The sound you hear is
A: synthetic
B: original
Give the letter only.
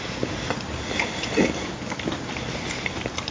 B